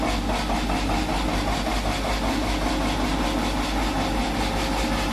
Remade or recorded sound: recorded